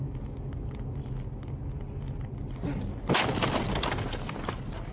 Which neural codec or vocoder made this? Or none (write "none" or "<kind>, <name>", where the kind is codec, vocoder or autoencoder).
none